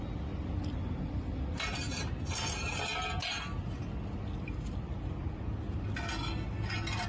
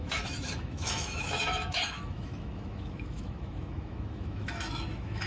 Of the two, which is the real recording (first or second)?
first